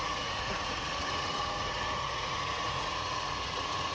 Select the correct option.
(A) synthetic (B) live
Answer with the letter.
A